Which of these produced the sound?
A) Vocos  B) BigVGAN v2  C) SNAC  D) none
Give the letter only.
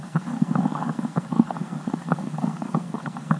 C